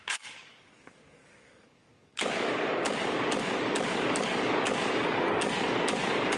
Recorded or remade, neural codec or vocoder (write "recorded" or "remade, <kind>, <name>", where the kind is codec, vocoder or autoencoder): remade, codec, DAC